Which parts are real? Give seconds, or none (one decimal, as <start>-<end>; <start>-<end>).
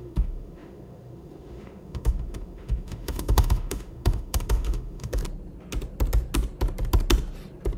5.2-7.8